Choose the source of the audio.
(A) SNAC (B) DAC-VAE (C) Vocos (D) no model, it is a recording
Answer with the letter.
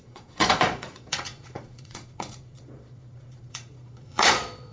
C